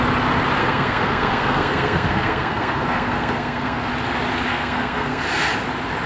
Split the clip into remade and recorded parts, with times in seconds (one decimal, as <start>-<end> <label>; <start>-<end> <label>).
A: 0.0-0.6 recorded; 0.6-3.9 remade; 3.9-4.5 recorded; 4.5-5.2 remade; 5.2-6.1 recorded